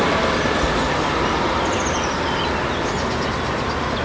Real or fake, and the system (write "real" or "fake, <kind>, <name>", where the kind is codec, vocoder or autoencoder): real